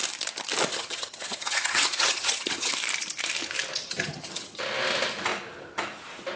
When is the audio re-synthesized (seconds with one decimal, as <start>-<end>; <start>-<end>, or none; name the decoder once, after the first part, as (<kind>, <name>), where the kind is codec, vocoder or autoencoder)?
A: 0.7-2.7 (vocoder, HiFi-GAN); 3.8-4.6